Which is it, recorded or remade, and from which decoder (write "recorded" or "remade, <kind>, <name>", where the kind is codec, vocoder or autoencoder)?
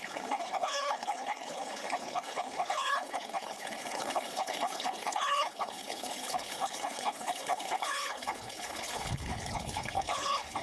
remade, codec, HILCodec